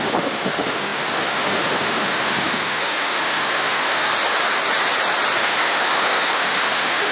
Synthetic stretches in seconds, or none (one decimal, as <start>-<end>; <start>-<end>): 0.0-4.1; 5.4-7.1